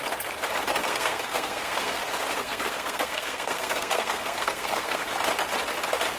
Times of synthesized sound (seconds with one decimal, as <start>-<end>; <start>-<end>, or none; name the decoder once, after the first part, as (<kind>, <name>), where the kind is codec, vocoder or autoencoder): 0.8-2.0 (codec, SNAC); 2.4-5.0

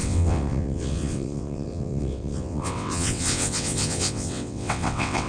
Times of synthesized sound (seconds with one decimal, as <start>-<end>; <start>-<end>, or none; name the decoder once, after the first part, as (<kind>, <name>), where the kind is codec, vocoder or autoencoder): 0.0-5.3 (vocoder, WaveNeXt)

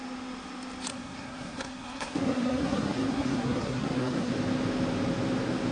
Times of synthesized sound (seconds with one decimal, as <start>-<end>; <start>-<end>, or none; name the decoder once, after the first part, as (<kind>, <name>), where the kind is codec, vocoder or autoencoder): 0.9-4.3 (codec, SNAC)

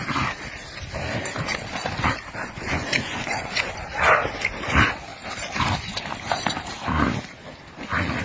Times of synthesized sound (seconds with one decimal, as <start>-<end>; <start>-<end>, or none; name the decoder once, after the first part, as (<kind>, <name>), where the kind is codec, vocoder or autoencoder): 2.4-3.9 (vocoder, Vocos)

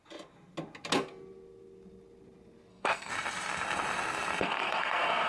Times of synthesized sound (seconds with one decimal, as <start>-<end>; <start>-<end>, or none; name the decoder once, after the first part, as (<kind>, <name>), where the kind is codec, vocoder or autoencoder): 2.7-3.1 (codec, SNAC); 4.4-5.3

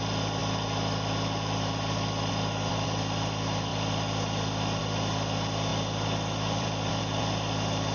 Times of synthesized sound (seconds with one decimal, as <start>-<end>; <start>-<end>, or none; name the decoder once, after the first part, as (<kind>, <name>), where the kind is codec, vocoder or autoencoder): 5.7-6.9 (vocoder, BigVGAN v2)